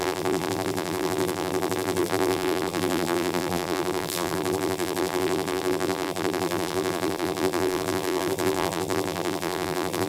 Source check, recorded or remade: remade